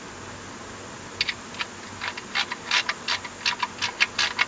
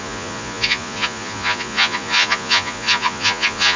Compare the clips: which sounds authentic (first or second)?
first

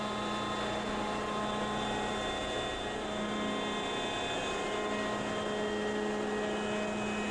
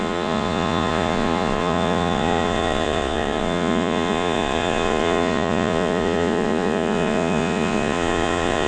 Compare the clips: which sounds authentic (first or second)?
first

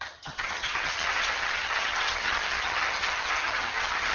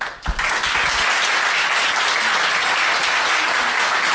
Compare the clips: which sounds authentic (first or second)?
second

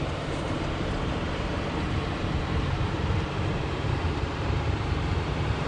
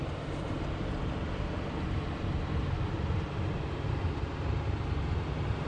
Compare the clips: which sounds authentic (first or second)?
second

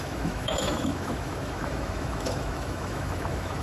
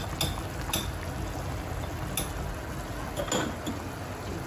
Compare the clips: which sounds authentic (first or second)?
second